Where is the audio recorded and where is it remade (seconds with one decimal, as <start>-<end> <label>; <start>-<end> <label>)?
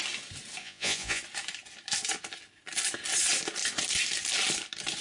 0.0-0.6 recorded; 0.6-1.2 remade; 1.2-5.0 recorded